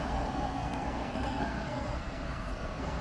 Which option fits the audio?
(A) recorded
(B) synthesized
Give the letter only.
B